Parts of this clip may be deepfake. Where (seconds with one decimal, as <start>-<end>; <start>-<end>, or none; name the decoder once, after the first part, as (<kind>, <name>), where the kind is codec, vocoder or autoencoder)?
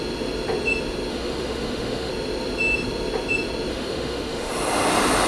1.1-2.1 (autoencoder, DAC-VAE); 3.7-4.5